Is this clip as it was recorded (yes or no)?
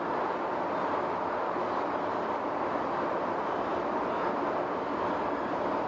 yes